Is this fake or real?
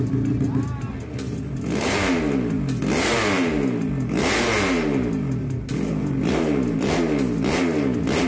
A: real